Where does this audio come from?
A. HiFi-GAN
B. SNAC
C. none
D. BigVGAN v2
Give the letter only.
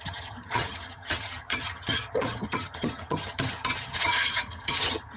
A